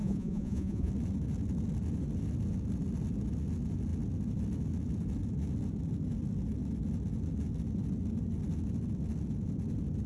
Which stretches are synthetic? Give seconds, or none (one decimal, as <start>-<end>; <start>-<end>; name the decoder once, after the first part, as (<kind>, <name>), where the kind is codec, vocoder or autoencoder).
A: 0.0-0.9 (vocoder, Vocos)